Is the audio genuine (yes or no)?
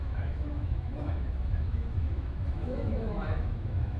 no